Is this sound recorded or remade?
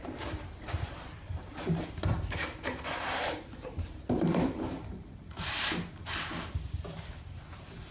remade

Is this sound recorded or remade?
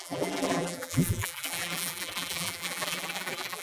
remade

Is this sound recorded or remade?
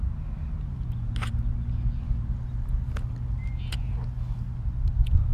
recorded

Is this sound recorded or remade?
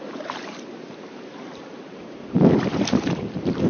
remade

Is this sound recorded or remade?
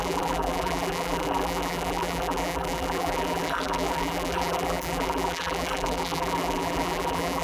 remade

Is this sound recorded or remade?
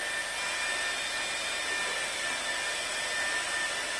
recorded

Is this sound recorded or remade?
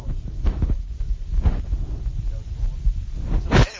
remade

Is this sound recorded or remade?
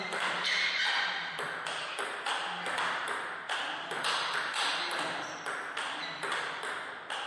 recorded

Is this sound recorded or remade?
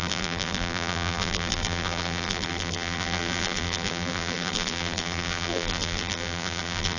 remade